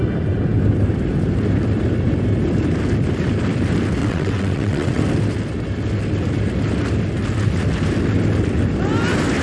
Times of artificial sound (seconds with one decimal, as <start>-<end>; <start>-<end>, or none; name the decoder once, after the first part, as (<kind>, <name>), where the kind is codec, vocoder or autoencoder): 4.0-5.0 (vocoder, WaveNeXt)